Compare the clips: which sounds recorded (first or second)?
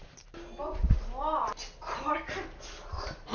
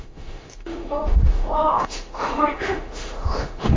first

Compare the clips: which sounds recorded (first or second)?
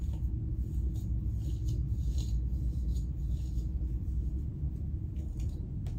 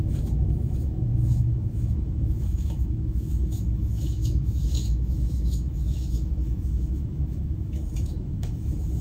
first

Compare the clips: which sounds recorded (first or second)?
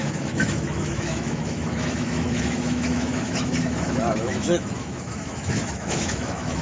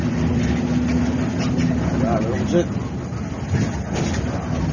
second